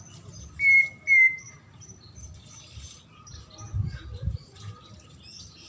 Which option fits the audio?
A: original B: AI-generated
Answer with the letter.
A